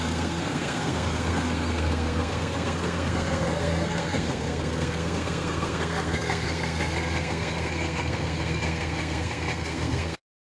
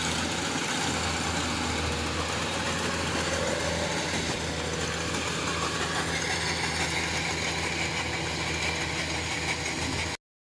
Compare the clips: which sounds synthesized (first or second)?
first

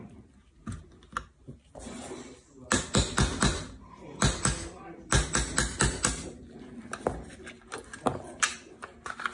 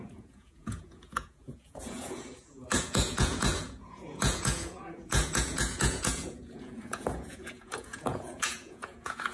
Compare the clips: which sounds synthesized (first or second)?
second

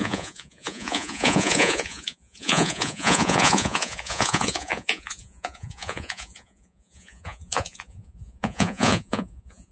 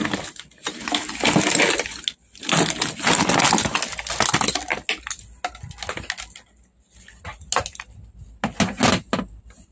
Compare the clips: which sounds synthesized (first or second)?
first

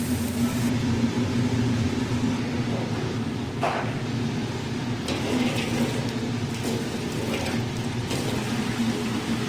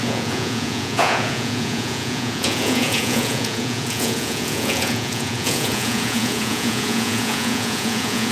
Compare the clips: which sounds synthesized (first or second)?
second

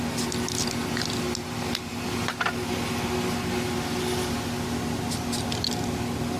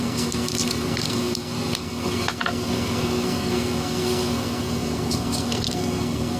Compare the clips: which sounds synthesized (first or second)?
second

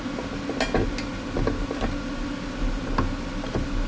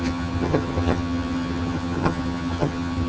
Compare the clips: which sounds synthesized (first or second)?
second